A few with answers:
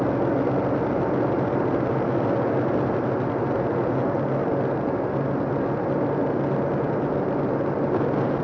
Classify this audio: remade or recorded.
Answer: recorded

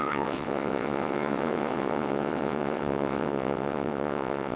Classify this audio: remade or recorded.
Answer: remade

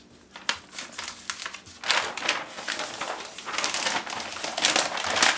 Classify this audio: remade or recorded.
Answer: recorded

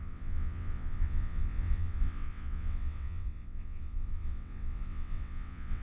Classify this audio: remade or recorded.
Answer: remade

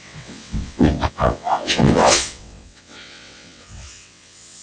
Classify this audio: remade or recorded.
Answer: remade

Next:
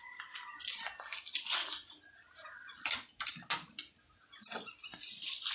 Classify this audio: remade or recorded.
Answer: recorded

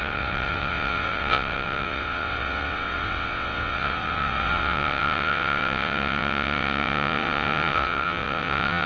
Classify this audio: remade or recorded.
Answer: remade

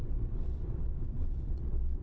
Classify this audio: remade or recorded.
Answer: remade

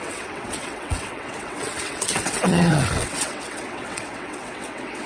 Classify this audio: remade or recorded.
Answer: remade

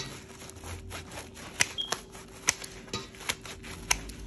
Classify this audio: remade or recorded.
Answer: recorded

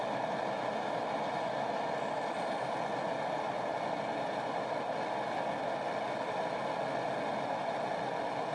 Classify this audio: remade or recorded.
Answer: recorded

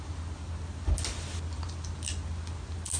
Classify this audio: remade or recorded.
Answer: recorded